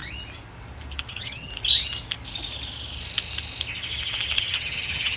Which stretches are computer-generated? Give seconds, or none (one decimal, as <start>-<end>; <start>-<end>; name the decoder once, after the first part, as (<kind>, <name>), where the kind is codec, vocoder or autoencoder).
1.1-1.5 (vocoder, HiFi-GAN); 4.4-5.2